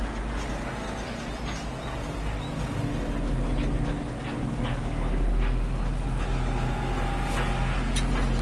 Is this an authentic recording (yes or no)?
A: yes